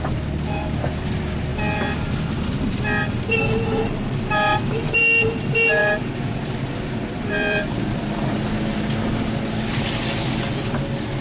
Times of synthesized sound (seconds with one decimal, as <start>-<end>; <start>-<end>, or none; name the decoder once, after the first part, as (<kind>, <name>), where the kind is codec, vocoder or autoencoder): 4.5-5.0 (vocoder, BigVGAN v2); 5.8-8.3

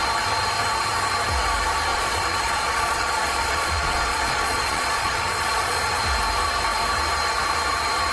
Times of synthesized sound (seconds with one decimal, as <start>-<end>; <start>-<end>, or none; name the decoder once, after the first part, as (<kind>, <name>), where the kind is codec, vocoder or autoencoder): 1.9-6.0 (vocoder, Vocos)

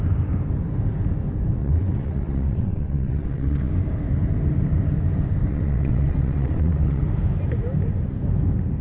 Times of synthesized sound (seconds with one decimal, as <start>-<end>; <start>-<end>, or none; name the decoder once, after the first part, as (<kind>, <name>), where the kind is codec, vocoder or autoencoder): 1.6-3.7 (vocoder, WaveNeXt); 5.5-7.0

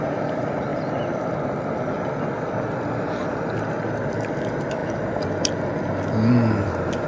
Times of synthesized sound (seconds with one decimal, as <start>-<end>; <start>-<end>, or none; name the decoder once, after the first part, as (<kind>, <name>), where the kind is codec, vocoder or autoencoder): none

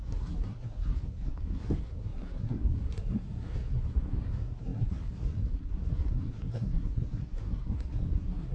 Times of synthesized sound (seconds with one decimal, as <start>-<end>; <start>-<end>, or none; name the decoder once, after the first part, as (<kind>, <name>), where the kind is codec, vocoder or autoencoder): 0.0-8.5 (codec, SNAC)

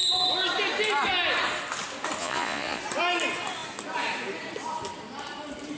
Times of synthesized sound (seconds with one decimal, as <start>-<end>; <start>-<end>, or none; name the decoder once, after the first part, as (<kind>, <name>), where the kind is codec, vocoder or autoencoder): 2.2-2.8 (vocoder, Vocos)

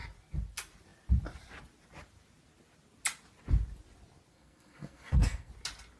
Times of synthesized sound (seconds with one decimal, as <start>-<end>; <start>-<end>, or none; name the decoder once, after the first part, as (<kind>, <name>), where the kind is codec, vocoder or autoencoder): 4.3-5.5 (codec, SNAC)